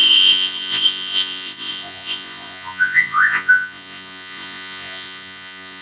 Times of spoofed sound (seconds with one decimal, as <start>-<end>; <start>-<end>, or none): 0.0-5.8